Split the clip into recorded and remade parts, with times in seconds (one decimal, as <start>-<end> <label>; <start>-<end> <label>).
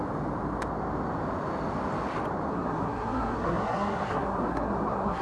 0.0-2.5 recorded; 2.5-5.2 remade